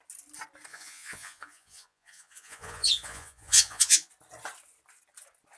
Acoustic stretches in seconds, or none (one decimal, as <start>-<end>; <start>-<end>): 0.0-0.7; 4.1-5.6